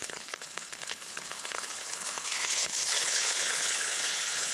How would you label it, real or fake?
fake